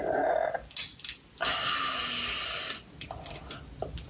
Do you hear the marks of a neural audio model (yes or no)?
no